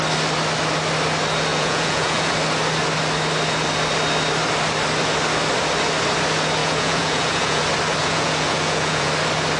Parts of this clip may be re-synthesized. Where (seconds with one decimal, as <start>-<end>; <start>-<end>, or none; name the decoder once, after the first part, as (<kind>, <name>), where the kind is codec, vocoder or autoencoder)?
1.5-2.3 (vocoder, Vocos); 6.6-7.6; 8.0-9.1